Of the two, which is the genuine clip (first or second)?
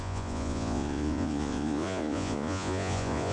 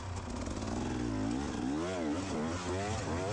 second